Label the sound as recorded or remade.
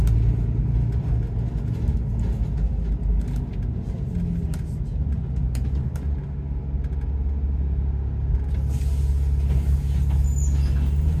recorded